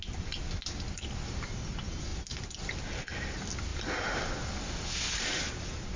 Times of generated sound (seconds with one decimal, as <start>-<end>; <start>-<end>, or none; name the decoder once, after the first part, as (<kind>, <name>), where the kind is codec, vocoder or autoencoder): none